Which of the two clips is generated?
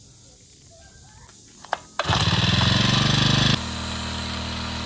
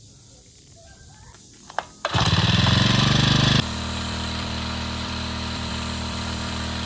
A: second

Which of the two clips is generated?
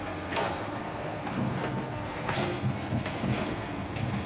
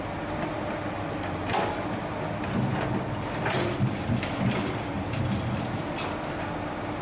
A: first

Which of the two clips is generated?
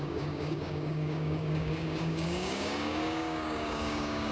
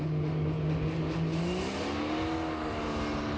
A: first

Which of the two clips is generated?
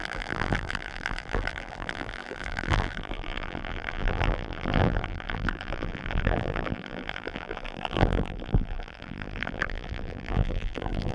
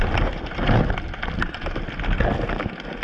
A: first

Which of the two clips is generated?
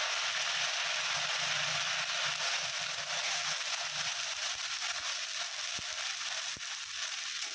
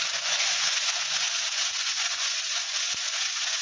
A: second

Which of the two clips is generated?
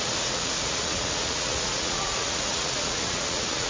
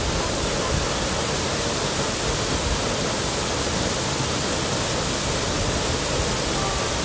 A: first